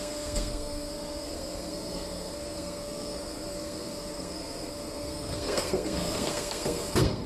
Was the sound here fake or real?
fake